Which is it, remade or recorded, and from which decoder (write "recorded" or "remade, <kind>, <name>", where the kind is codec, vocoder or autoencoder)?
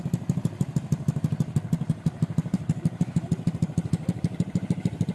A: remade, vocoder, BigVGAN v2